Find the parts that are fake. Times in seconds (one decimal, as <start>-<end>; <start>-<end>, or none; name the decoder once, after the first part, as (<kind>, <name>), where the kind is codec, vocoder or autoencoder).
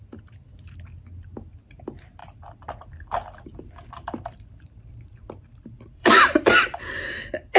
2.2-6.8 (vocoder, BigVGAN v2)